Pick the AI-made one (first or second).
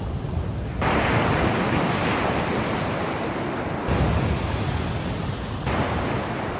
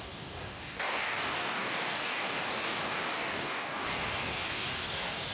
second